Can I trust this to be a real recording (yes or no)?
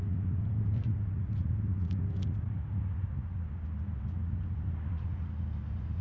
yes